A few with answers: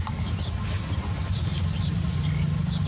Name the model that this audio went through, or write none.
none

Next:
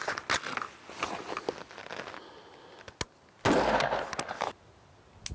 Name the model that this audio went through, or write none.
none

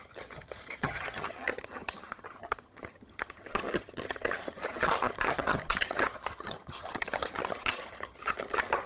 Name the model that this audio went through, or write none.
vocoder, HiFi-GAN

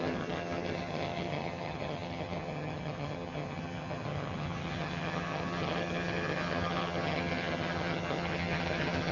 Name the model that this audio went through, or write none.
vocoder, HiFi-GAN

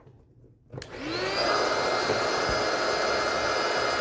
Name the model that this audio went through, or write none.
none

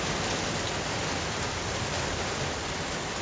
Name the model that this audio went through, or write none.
none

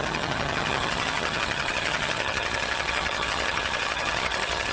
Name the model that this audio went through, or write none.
vocoder, HiFi-GAN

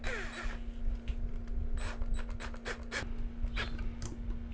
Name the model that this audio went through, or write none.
none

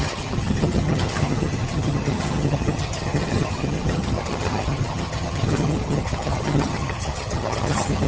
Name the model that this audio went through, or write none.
vocoder, HiFi-GAN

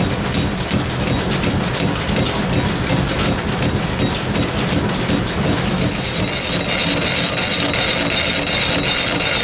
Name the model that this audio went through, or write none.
none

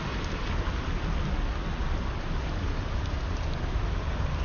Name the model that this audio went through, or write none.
none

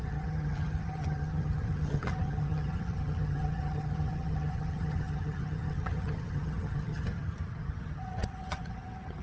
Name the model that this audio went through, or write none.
vocoder, HiFi-GAN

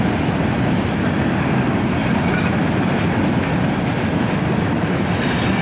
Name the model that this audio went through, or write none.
none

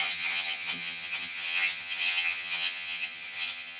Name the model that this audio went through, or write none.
vocoder, HiFi-GAN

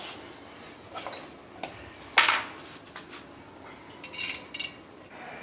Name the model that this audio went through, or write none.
none